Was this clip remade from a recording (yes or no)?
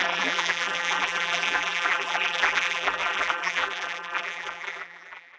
yes